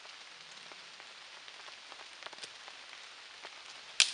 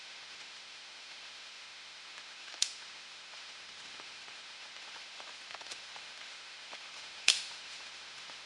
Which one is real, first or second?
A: first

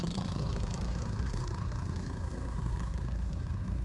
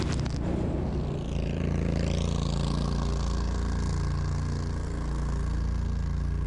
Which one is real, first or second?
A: second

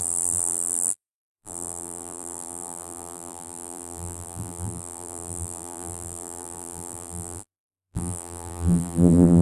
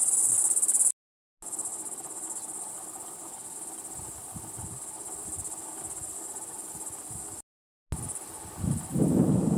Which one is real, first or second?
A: second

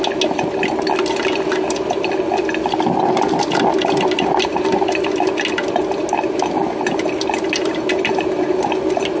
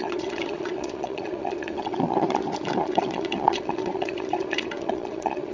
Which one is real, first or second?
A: first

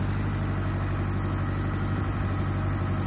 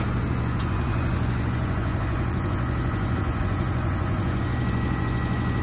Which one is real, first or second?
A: first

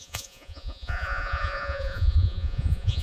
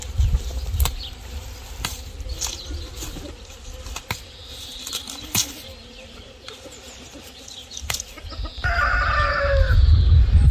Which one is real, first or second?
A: second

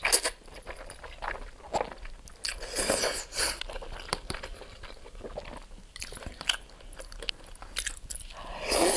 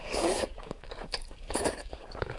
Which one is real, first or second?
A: first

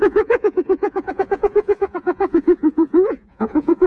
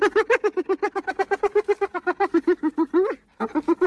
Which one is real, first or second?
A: second